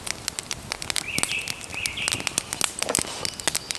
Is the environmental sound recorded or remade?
recorded